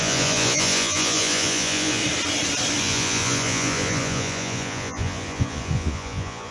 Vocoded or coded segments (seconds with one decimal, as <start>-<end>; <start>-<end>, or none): 0.0-2.0; 2.8-6.5